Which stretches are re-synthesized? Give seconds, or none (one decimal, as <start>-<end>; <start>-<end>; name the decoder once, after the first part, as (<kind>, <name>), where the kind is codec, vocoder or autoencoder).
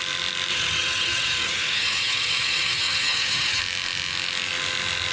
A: 0.5-3.6 (vocoder, HiFi-GAN)